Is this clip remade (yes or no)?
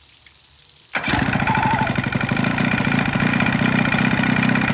no